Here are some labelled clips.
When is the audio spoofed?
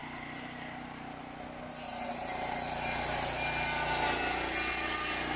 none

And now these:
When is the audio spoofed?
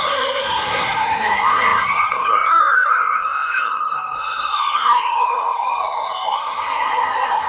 0.0-7.5 (codec, SNAC)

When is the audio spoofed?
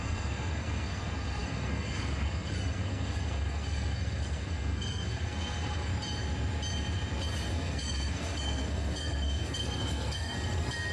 0.0-5.9 (codec, SNAC); 7.5-10.9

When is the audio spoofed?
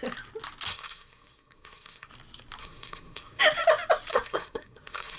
0.7-2.1 (codec, SNAC); 2.6-3.4; 4.1-5.2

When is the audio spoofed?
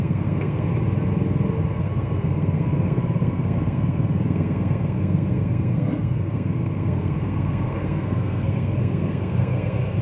0.0-0.7 (codec, SNAC); 1.8-10.0